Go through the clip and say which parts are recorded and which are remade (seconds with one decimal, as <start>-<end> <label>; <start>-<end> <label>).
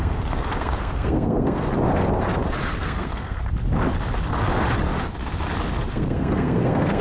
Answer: 0.0-1.7 remade; 1.7-2.8 recorded; 2.8-3.5 remade; 3.5-5.9 recorded; 5.9-7.0 remade